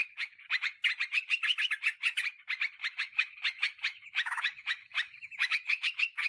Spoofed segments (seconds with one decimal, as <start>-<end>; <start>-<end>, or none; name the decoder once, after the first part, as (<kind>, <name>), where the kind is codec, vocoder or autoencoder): 0.0-0.7 (autoencoder, DAC-VAE); 2.8-6.3